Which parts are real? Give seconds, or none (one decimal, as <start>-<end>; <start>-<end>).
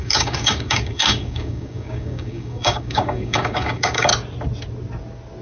4.1-5.4